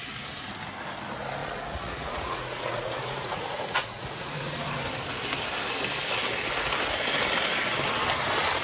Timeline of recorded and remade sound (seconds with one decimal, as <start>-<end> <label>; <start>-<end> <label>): 0.0-1.4 recorded; 1.4-4.7 remade; 4.7-8.6 recorded